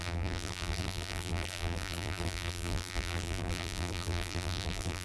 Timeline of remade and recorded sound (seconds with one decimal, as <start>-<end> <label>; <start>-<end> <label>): 0.0-5.0 remade